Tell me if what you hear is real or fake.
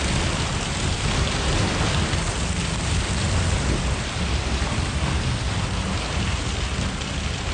real